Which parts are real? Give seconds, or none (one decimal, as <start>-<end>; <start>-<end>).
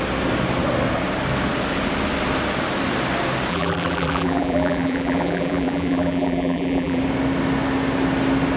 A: 0.0-3.5; 7.0-8.6